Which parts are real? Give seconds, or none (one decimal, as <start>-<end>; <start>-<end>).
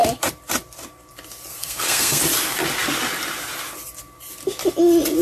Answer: 0.0-1.5; 2.2-5.2